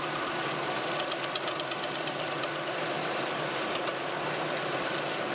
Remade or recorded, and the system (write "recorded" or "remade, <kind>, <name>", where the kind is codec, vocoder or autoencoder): recorded